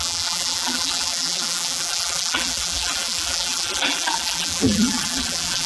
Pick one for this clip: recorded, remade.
remade